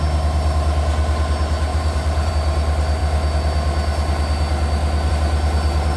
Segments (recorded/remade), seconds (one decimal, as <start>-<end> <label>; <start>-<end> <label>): 0.0-1.7 recorded; 1.7-2.3 remade; 2.3-6.0 recorded